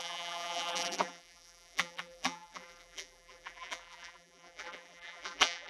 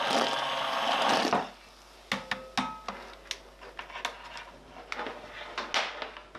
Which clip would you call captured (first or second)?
second